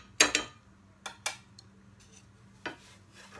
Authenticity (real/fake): real